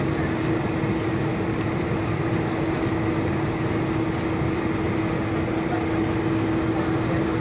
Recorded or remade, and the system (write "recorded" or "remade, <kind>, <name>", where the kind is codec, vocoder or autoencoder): recorded